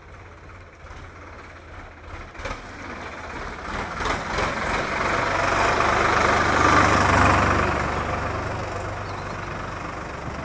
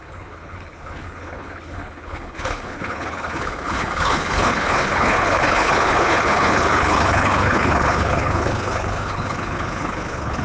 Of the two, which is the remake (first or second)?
second